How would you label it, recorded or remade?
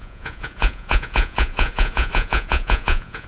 remade